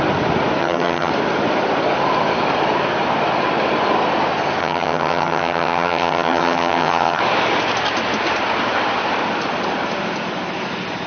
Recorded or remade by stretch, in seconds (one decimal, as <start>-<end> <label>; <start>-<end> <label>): 0.0-0.6 recorded; 0.6-1.1 remade; 1.1-4.6 recorded; 4.6-7.2 remade; 7.2-11.1 recorded